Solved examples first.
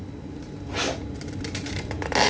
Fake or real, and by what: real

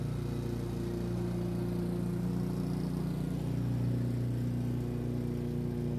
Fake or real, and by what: real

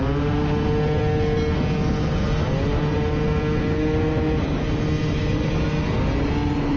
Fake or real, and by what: real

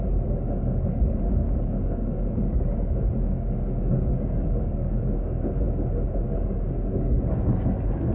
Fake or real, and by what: fake, codec, DAC